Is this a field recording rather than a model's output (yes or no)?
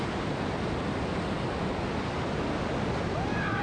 yes